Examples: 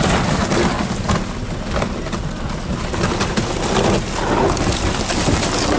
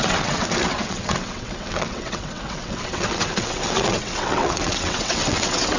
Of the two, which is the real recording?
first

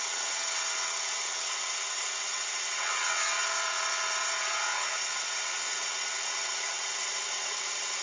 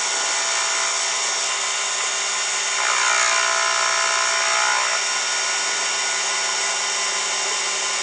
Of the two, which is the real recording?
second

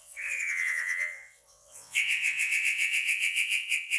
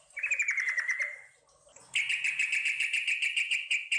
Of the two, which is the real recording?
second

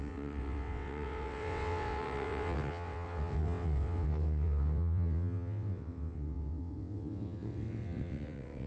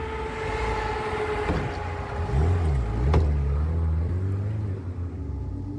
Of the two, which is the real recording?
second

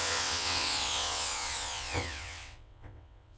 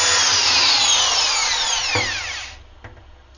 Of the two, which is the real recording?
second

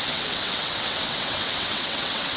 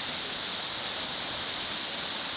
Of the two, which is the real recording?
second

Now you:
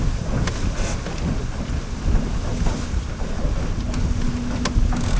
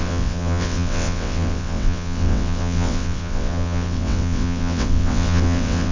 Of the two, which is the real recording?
first